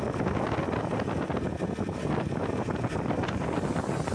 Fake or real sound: real